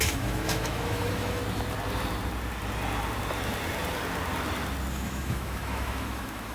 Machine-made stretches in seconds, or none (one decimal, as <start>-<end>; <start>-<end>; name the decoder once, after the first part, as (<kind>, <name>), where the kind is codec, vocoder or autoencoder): 0.0-1.4 (autoencoder, DAC-VAE); 4.9-6.5